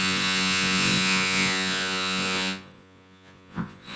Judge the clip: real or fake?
fake